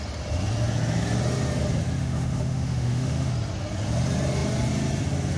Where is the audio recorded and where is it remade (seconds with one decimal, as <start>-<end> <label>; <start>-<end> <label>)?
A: 0.0-2.0 recorded; 2.0-3.3 remade; 3.3-5.4 recorded